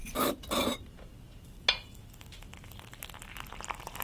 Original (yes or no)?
yes